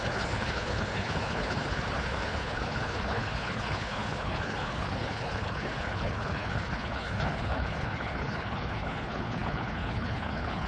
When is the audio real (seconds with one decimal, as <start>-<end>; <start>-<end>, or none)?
none